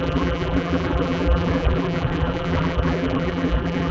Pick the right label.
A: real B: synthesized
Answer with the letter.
B